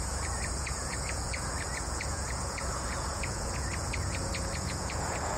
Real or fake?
fake